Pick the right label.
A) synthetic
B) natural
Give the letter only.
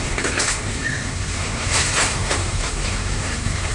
A